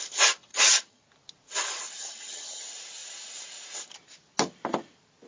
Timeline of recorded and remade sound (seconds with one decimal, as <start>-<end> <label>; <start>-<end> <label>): 0.0-0.5 recorded; 0.5-1.0 remade; 1.0-2.0 recorded; 2.0-2.6 remade; 2.6-5.3 recorded